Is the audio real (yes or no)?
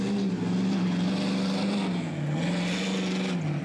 yes